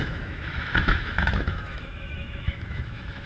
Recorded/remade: remade